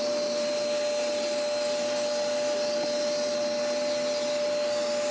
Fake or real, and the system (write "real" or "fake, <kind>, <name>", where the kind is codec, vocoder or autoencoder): real